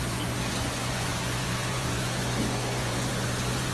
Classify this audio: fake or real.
fake